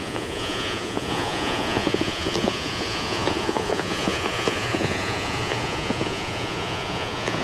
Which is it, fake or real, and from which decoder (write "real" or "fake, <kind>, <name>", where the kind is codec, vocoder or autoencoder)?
fake, vocoder, Vocos